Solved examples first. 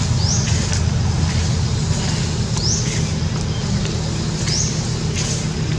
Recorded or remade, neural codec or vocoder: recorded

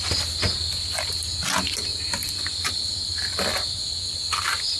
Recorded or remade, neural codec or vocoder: recorded